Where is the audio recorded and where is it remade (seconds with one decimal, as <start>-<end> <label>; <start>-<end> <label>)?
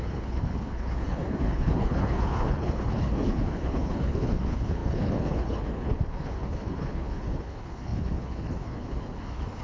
0.0-9.6 remade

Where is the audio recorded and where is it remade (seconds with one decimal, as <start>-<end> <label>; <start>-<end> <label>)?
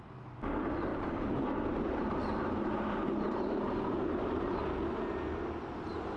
0.0-0.9 recorded; 0.9-4.6 remade; 4.6-6.2 recorded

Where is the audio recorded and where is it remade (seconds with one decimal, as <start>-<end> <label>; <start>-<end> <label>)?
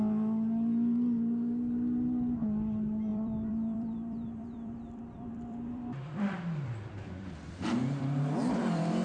0.0-3.1 recorded; 3.1-7.6 remade; 7.6-9.0 recorded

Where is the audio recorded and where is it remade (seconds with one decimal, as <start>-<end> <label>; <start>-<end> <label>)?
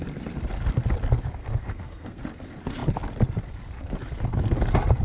0.0-1.4 recorded; 1.4-2.2 remade; 2.2-5.0 recorded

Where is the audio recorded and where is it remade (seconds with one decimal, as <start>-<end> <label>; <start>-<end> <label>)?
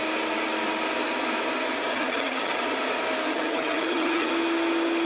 0.0-1.9 recorded; 1.9-2.6 remade; 2.6-3.3 recorded; 3.3-4.3 remade; 4.3-5.0 recorded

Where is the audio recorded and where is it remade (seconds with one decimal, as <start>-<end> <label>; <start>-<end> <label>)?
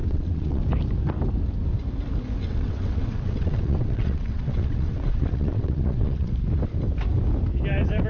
0.0-0.6 remade; 0.6-2.4 recorded; 2.4-6.3 remade; 6.3-8.1 recorded